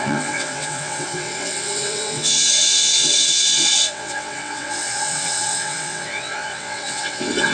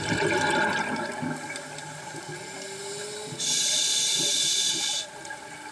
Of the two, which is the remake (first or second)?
first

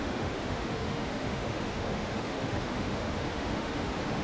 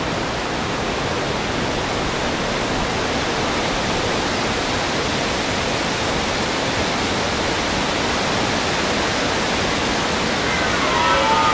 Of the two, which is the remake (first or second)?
first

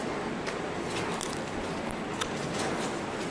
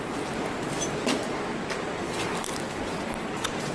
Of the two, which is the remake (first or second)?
second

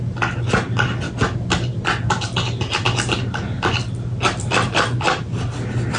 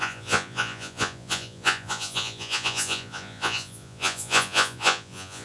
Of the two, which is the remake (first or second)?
second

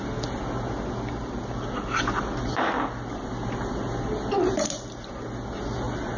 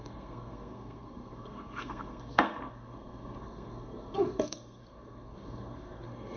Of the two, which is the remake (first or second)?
second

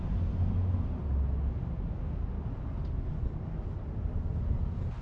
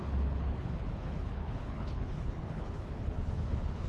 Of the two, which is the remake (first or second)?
second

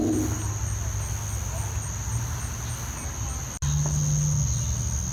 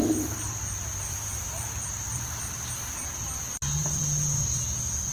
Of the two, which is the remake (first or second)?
second